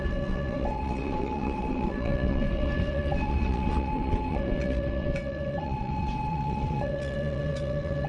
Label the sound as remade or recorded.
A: remade